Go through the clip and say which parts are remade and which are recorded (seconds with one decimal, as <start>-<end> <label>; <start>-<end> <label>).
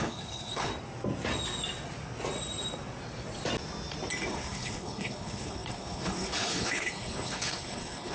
0.0-0.7 remade; 0.7-4.3 recorded; 4.3-8.1 remade